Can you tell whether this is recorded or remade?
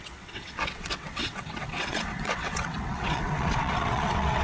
remade